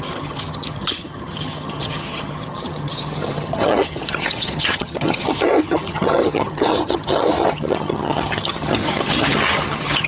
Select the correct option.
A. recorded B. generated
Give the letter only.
B